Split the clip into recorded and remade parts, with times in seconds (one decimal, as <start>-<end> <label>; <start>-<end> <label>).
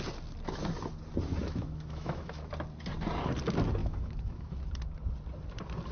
0.0-1.4 recorded; 1.4-2.5 remade; 2.5-3.8 recorded; 3.8-4.6 remade; 4.6-5.9 recorded